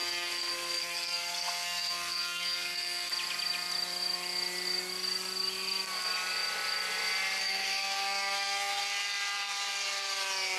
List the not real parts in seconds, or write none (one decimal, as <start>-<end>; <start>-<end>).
0.0-3.1; 7.4-8.8